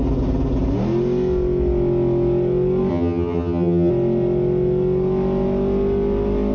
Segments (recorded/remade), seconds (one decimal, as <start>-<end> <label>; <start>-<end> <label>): 0.0-2.9 recorded; 2.9-3.9 remade; 3.9-6.5 recorded

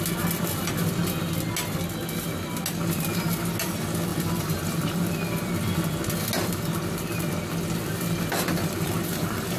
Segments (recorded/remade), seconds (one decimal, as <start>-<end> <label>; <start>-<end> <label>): 0.0-9.6 recorded

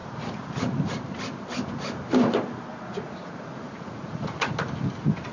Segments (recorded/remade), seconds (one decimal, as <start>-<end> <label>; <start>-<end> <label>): 0.0-0.5 remade; 0.5-2.7 recorded; 2.7-4.5 remade; 4.5-5.3 recorded

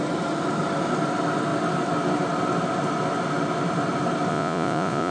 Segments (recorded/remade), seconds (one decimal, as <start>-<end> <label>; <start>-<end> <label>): 0.0-4.3 recorded; 4.3-5.1 remade

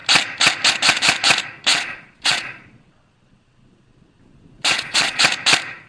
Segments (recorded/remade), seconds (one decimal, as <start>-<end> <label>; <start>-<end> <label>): 0.0-1.7 recorded; 1.7-5.2 remade; 5.2-5.9 recorded

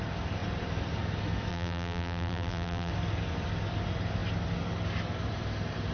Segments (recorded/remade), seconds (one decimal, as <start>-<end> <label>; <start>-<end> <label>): 0.0-1.5 recorded; 1.5-2.9 remade; 2.9-5.9 recorded